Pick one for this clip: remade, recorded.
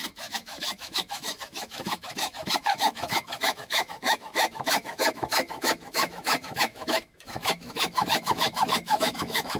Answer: remade